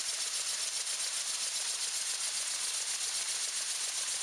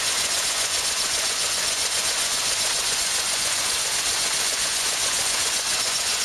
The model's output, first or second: second